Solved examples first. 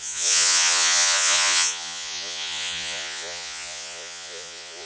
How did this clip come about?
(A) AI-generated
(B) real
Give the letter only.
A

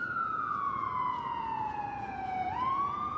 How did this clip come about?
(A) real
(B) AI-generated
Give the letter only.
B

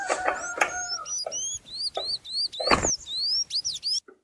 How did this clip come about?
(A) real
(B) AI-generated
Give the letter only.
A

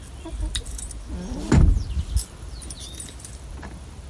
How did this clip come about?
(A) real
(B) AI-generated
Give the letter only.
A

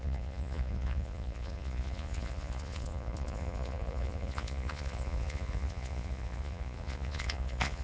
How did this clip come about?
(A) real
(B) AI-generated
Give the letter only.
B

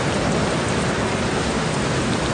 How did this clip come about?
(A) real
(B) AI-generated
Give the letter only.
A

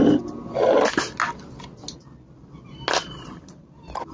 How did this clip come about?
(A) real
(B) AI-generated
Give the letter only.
A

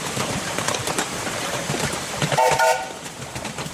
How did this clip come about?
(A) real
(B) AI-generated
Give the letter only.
B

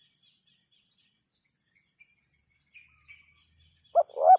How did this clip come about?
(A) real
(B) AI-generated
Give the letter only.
A